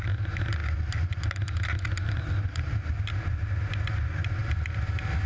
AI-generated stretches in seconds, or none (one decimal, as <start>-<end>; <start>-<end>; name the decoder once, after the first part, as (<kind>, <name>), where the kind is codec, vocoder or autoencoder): none